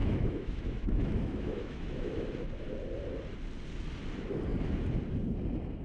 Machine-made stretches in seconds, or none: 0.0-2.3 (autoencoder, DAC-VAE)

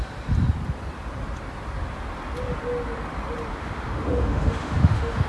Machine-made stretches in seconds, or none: 3.5-5.3 (autoencoder, DAC-VAE)